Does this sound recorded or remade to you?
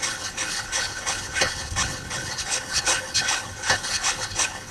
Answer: remade